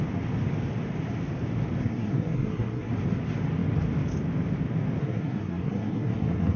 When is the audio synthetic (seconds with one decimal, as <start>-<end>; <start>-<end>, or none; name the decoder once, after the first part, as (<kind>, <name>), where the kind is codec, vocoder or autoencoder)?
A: 1.8-2.9 (codec, SNAC); 5.0-6.6